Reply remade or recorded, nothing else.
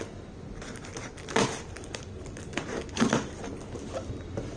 recorded